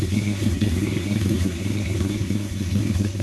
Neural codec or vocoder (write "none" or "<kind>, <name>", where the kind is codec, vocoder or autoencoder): codec, SNAC